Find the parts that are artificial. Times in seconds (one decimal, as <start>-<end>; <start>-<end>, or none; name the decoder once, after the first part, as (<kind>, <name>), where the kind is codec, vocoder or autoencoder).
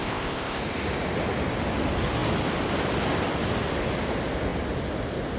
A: 0.0-0.6 (codec, ZipCodec)